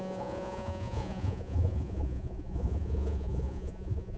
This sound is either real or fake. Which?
fake